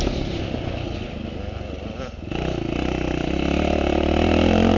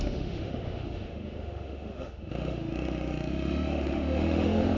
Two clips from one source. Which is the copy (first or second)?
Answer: second